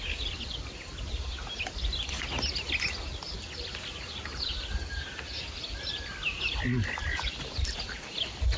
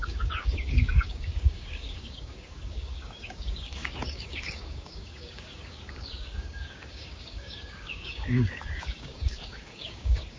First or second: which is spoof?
second